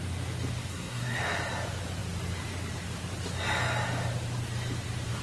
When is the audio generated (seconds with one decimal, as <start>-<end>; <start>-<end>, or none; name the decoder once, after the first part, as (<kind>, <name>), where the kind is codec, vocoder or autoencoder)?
0.7-1.2 (codec, SNAC)